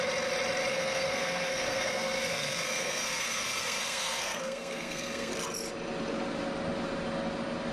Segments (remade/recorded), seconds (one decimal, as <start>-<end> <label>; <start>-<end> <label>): 0.0-0.7 recorded; 0.7-5.3 remade; 5.3-7.7 recorded